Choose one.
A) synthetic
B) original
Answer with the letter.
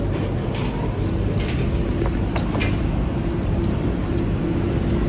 B